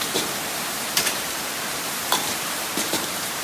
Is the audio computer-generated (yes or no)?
yes